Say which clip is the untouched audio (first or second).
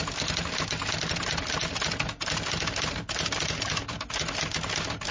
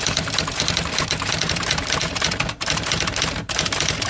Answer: first